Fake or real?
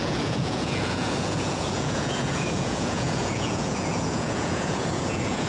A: fake